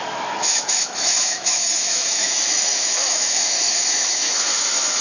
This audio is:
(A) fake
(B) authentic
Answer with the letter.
A